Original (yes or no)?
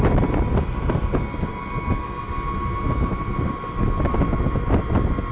yes